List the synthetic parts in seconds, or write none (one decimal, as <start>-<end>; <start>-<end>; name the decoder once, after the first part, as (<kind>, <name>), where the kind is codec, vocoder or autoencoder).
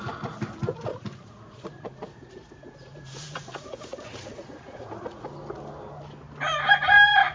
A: 0.9-5.3 (vocoder, Vocos)